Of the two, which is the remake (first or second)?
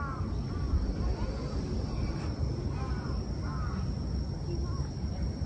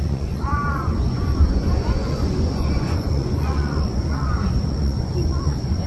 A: second